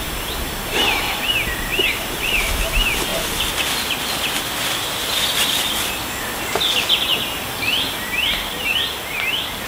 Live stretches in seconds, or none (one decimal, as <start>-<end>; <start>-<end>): 0.0-9.7